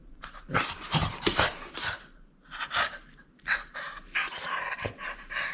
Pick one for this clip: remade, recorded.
remade